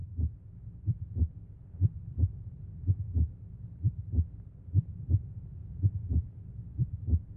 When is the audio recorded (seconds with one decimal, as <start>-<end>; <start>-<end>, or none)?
4.3-5.6